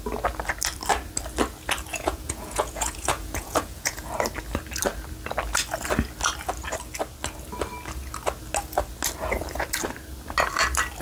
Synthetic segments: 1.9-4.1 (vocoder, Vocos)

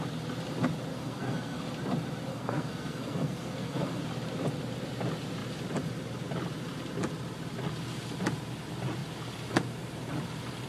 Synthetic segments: 0.9-1.6 (codec, SNAC); 2.3-4.0

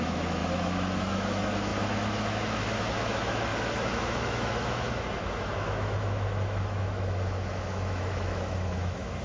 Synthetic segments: 0.0-9.2 (autoencoder, DAC-VAE)

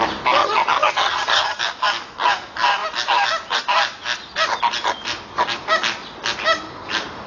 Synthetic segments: 0.4-1.6 (vocoder, HiFi-GAN)

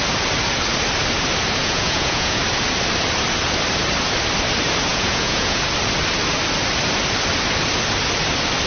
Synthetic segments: 1.6-2.4 (vocoder, Vocos); 4.9-5.7

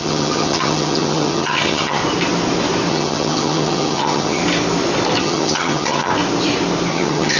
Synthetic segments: 0.0-2.0 (vocoder, HiFi-GAN); 2.9-4.4; 5.2-6.1; 6.9-7.4

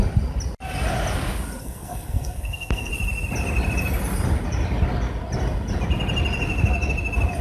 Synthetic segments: 1.6-2.9 (codec, SNAC)

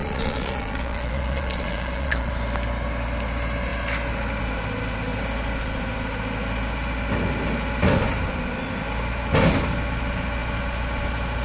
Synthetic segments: 0.0-2.3 (vocoder, Vocos)